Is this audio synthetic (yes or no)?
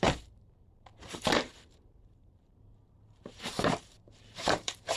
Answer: yes